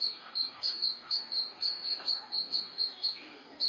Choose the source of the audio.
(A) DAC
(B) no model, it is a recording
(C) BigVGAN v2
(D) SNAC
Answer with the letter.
A